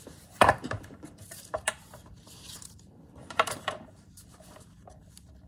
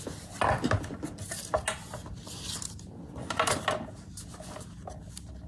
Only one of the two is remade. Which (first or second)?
first